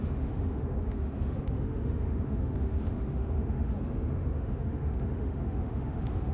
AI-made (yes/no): yes